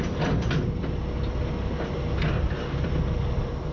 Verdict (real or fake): fake